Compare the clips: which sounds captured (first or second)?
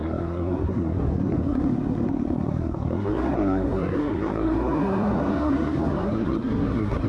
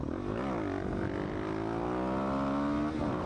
second